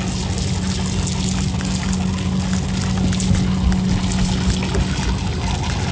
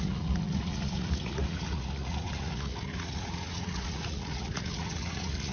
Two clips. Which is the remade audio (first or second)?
second